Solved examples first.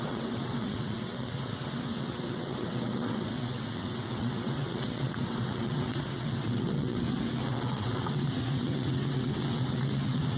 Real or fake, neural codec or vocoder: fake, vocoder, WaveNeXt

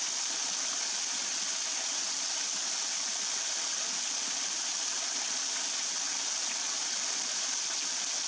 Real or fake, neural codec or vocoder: real